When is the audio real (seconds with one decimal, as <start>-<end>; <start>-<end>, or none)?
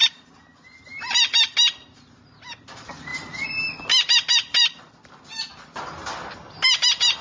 0.0-3.1; 4.8-7.2